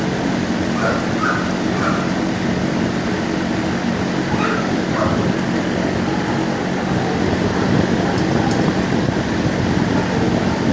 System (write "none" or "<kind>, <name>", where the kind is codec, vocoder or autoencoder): none